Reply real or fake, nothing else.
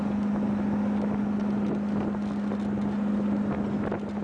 real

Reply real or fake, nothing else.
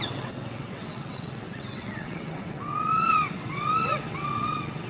fake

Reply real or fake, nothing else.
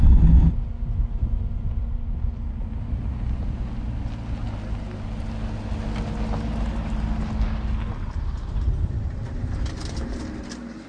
real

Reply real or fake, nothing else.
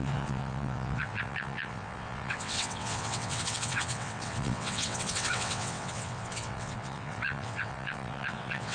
fake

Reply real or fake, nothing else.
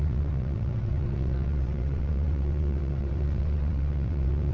fake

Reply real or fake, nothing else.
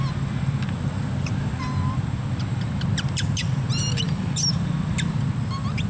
real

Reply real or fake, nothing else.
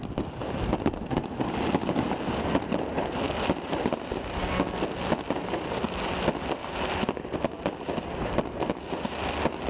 real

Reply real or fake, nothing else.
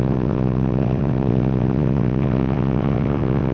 fake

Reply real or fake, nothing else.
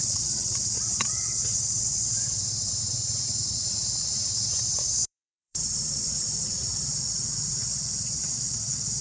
fake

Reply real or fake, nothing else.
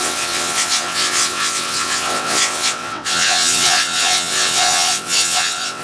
fake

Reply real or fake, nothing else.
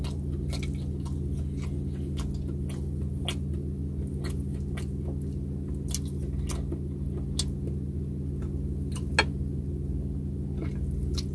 real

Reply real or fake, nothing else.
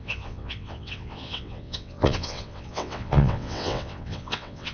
fake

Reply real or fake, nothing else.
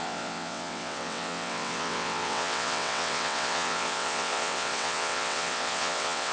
fake